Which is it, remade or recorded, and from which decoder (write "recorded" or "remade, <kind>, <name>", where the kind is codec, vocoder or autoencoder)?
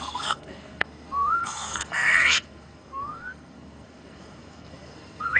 remade, codec, SNAC